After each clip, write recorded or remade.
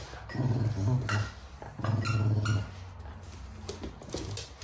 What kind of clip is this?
recorded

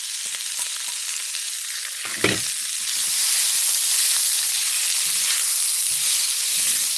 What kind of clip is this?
recorded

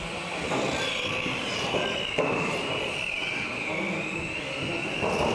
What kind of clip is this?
recorded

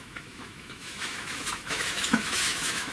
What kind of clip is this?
remade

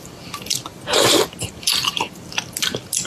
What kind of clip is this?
recorded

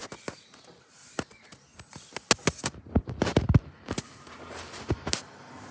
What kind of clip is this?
recorded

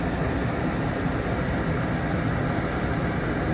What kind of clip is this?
recorded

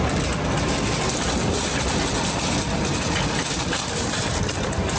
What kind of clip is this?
recorded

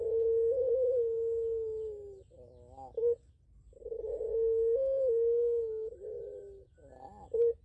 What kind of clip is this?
recorded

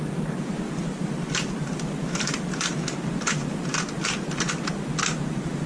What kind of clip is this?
recorded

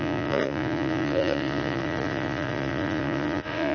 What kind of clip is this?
remade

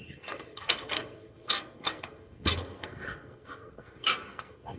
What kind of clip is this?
remade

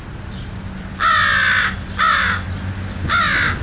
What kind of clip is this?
recorded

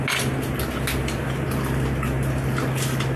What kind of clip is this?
recorded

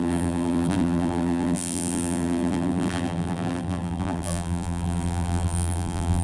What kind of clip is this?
remade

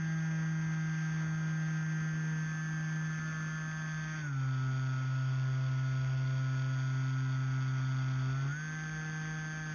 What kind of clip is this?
recorded